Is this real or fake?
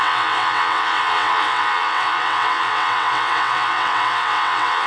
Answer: fake